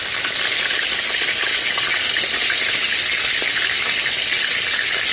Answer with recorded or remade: recorded